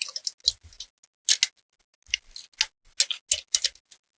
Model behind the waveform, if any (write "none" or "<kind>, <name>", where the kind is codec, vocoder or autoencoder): none